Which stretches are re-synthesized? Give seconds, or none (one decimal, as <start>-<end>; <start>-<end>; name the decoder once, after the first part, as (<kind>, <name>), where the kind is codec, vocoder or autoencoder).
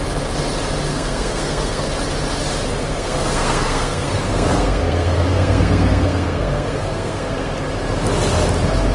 0.9-1.9 (codec, SNAC); 2.8-7.5